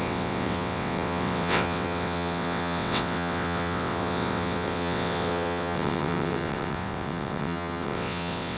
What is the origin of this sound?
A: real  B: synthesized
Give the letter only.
B